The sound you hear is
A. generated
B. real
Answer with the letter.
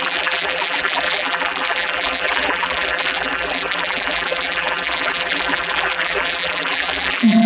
A